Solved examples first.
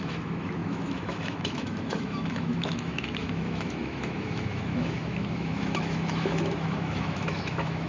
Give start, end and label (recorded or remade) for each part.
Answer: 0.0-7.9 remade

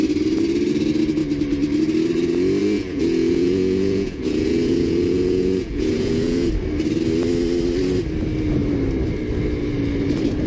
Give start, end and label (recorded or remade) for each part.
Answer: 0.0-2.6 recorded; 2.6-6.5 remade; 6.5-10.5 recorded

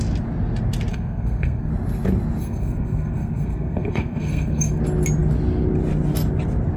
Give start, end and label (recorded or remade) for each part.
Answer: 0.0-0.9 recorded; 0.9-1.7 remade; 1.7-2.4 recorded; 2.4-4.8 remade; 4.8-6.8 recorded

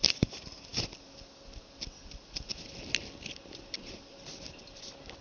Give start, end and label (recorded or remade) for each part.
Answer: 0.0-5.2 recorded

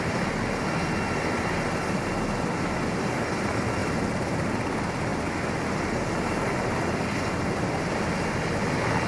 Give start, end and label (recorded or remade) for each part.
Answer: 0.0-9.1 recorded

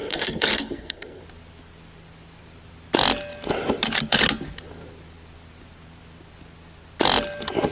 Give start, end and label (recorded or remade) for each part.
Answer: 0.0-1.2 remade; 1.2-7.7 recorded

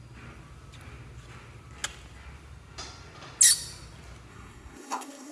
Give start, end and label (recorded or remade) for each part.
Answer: 0.0-4.3 recorded; 4.3-5.3 remade